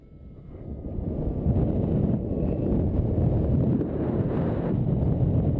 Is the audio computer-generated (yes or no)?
no